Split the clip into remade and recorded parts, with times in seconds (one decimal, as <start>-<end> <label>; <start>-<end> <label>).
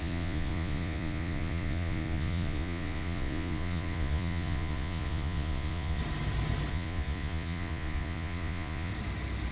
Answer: 0.0-6.0 remade; 6.0-6.7 recorded; 6.7-8.9 remade; 8.9-9.5 recorded